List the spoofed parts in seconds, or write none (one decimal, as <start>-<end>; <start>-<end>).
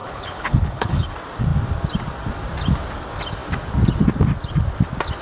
0.0-1.1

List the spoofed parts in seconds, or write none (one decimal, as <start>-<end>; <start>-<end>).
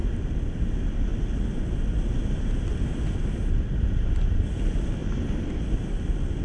none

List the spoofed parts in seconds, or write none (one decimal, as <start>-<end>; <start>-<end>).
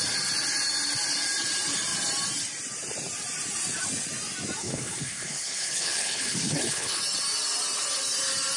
4.6-7.0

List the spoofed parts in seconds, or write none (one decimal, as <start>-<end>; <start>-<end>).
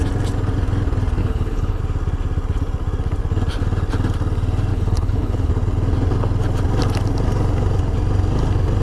1.2-1.8; 4.7-5.5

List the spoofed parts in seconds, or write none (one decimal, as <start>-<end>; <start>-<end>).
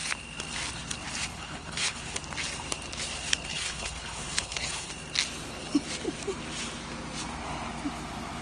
1.3-2.2; 3.5-4.9